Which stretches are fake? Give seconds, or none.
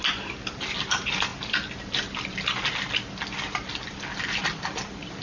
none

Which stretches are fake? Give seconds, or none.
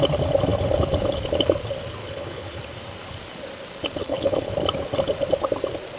2.0-2.6 (codec, HILCodec); 4.0-4.5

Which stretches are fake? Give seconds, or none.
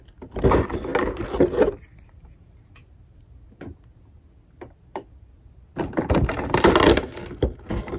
none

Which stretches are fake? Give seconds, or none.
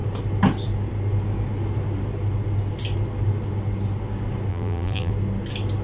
4.5-5.1 (vocoder, BigVGAN v2)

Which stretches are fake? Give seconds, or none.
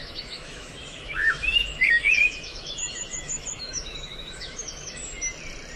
0.0-5.0 (autoencoder, DAC-VAE)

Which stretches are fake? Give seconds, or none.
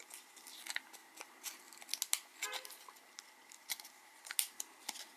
none